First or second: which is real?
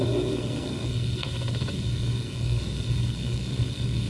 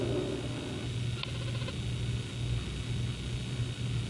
second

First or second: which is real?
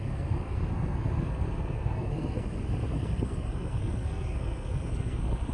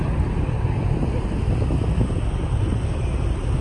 second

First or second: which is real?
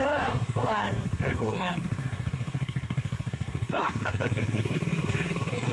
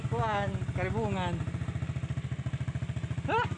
second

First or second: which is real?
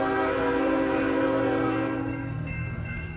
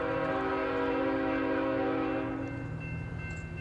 second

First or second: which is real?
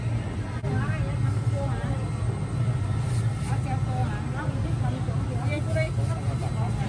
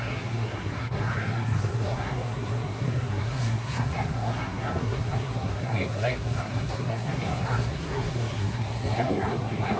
first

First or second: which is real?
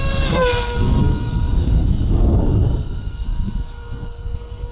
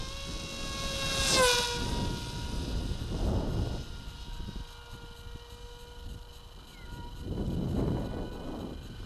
second